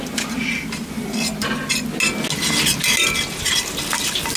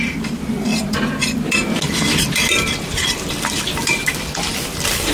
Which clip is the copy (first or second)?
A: second